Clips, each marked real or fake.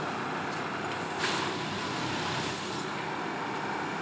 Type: real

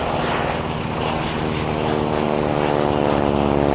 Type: real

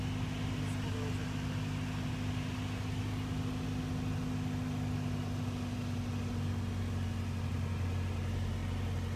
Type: real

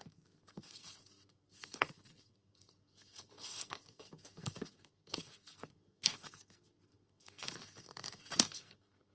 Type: fake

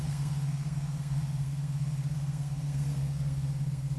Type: fake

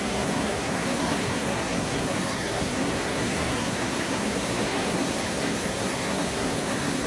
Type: fake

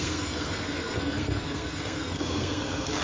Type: fake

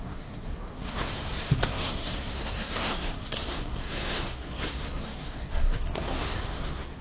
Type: fake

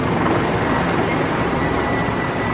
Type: real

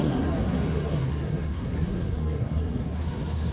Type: fake